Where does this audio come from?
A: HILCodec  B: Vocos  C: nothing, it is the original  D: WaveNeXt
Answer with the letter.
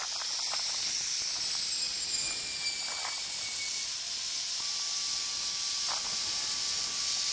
C